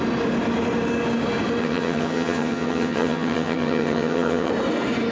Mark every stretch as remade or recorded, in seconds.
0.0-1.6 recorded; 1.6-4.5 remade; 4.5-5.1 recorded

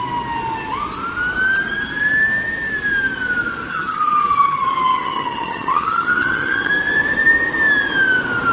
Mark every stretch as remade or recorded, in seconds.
0.0-3.7 recorded; 3.7-6.7 remade; 6.7-8.5 recorded

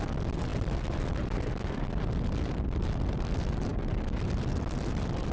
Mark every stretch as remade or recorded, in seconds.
0.0-5.3 recorded

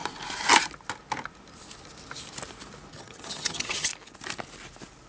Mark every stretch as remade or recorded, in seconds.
0.0-2.9 recorded; 2.9-3.9 remade; 3.9-5.1 recorded